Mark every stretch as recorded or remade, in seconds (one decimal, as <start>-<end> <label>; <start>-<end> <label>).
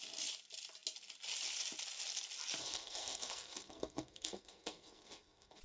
0.0-2.6 recorded; 2.6-5.6 remade